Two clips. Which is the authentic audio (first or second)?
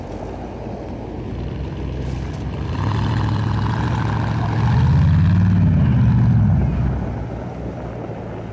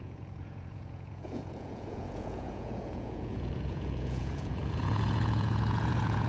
first